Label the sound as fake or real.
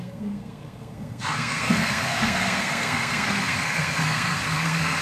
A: fake